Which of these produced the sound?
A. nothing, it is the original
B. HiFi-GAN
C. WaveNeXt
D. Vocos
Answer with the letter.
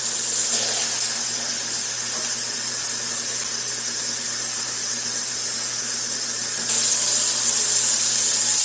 A